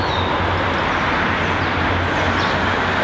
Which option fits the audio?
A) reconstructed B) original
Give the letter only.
B